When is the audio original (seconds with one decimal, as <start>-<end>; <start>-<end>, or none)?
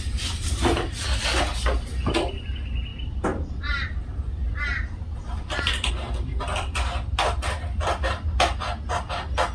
0.0-2.9; 5.9-9.5